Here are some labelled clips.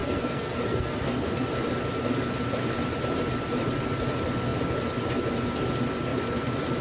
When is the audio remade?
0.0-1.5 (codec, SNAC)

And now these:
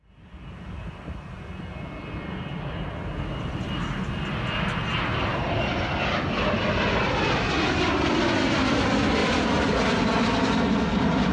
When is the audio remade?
none

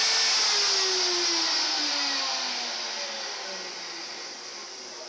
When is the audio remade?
none